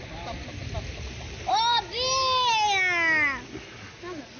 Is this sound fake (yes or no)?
no